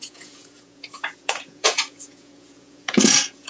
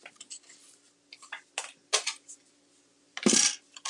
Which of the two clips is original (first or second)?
second